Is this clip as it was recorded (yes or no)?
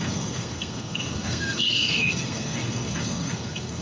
no